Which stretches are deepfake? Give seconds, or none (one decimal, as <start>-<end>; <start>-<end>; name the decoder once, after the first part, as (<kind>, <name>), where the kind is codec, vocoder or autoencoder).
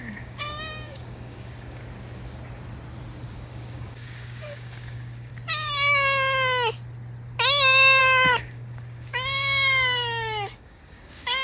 0.0-1.8 (codec, DAC); 3.3-5.3; 8.0-11.4